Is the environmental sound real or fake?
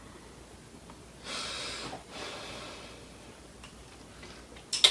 real